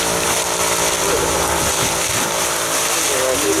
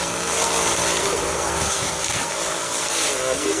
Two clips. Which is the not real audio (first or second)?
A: second